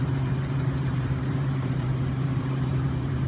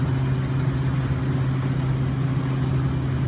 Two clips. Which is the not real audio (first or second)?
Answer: first